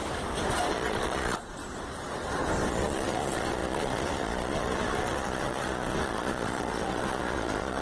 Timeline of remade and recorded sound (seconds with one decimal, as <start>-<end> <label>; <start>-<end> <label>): 0.0-0.7 recorded; 0.7-1.6 remade; 1.6-2.7 recorded; 2.7-7.8 remade